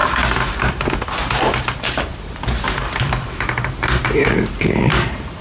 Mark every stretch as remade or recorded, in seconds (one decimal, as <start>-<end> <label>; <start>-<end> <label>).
0.0-0.6 recorded; 0.6-5.4 remade